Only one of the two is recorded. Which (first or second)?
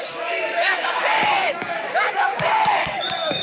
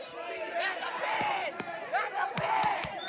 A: second